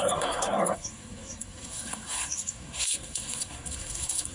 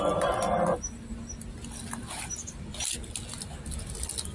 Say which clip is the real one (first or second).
second